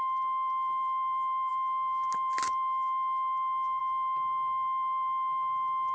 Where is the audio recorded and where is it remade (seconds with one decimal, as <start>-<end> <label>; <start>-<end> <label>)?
0.0-5.9 recorded